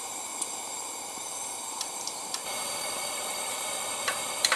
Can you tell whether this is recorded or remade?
remade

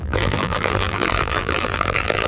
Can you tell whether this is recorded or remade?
remade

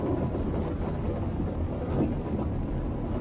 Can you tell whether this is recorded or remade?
recorded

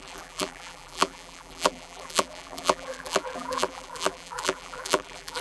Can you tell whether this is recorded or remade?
remade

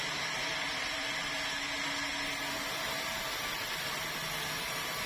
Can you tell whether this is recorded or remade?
recorded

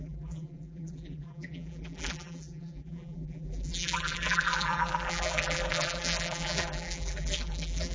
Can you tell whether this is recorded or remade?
remade